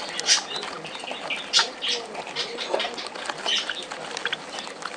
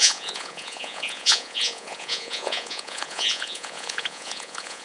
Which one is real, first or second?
first